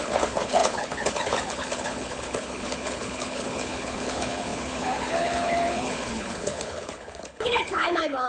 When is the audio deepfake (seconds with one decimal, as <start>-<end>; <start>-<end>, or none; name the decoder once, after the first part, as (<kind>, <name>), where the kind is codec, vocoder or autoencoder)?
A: 0.0-8.3 (codec, HILCodec)